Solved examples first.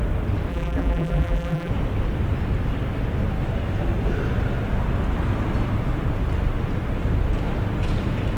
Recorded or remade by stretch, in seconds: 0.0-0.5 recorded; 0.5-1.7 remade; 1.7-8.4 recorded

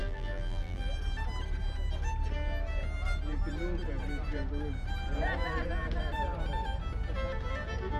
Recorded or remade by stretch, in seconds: 0.0-0.9 remade; 0.9-8.0 recorded